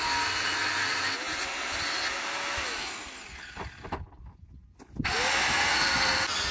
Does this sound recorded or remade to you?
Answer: recorded